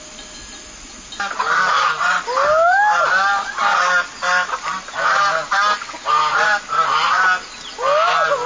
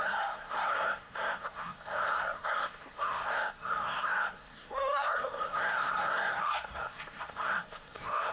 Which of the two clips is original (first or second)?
first